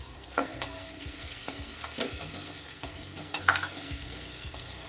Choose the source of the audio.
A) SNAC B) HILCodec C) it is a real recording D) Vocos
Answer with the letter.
A